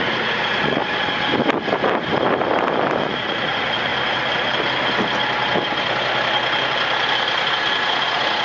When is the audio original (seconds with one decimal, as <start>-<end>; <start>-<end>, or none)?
0.8-3.0; 3.9-7.8